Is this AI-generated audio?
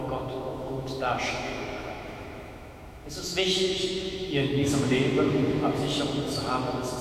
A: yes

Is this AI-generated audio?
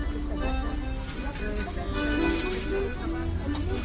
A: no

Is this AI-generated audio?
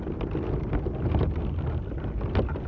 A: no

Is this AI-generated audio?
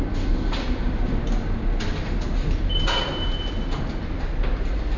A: no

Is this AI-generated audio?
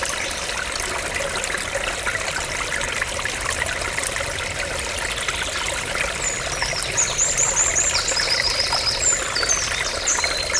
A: no